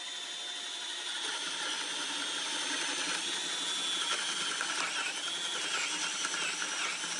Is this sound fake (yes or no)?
no